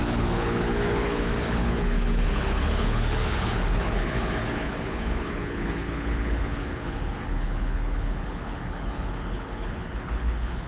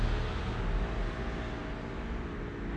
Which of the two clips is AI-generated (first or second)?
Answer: first